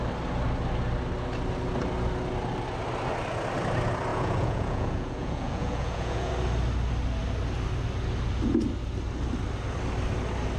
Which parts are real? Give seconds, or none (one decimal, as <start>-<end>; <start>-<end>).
0.0-4.1; 6.3-10.6